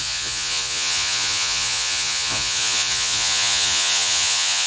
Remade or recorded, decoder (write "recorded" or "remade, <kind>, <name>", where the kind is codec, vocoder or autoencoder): remade, vocoder, Vocos